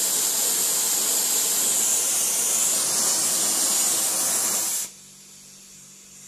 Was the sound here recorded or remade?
recorded